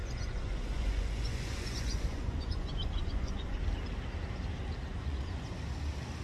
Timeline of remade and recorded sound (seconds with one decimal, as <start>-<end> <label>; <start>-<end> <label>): 0.0-3.6 remade; 3.6-4.9 recorded; 4.9-5.5 remade; 5.5-6.2 recorded